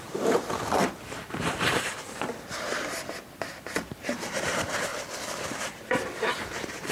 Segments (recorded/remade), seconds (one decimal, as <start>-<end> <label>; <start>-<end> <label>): 0.0-4.9 remade; 4.9-5.7 recorded; 5.7-6.9 remade